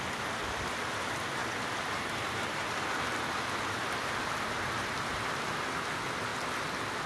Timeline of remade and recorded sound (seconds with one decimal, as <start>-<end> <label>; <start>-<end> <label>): 0.0-7.1 recorded